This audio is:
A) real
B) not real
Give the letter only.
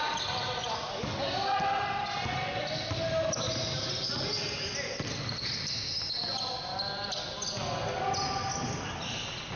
A